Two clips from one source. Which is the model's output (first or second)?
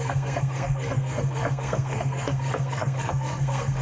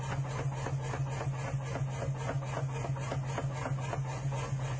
first